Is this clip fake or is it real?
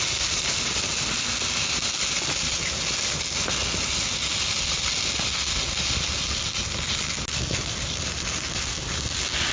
real